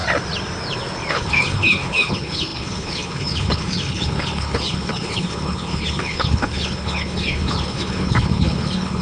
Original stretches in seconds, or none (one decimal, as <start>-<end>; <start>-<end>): 0.0-1.1